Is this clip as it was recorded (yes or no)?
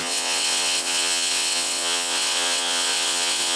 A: no